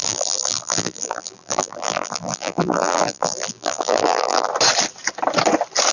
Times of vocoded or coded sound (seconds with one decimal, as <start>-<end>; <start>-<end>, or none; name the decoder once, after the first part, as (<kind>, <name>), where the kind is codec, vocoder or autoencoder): 0.0-4.5 (vocoder, BigVGAN v2)